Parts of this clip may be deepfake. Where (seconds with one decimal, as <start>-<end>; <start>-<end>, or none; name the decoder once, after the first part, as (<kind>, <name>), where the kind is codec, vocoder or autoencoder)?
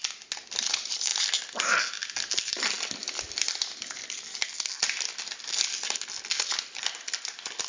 none